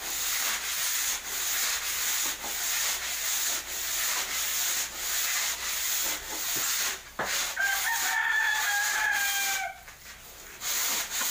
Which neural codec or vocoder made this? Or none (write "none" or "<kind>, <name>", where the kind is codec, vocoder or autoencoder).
none